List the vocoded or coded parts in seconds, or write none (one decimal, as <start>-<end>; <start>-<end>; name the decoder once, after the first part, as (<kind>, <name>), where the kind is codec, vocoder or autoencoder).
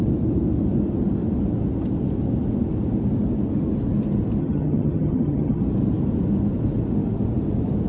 4.4-5.6 (vocoder, HiFi-GAN)